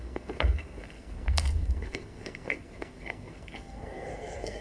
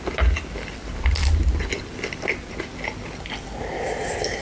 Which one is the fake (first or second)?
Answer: first